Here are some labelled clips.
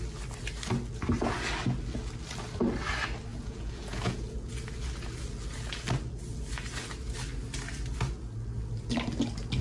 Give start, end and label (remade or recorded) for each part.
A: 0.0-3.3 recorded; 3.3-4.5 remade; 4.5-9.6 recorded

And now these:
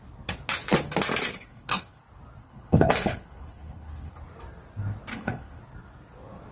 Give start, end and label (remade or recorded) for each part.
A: 0.0-1.4 recorded; 1.4-2.0 remade; 2.0-2.4 recorded; 2.4-4.1 remade; 4.1-5.1 recorded; 5.1-5.6 remade; 5.6-6.5 recorded

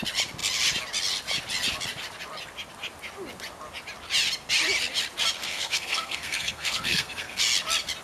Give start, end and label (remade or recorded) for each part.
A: 0.0-5.4 recorded; 5.4-7.4 remade; 7.4-8.0 recorded

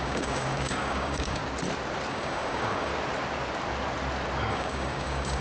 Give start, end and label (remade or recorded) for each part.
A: 0.0-1.4 remade; 1.4-2.1 recorded; 2.1-2.9 remade; 2.9-4.5 recorded; 4.5-5.4 remade